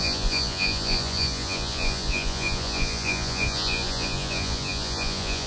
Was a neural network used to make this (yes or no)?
yes